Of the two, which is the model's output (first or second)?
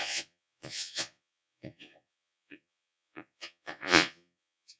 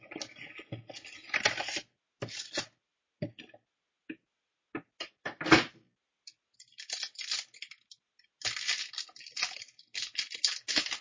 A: first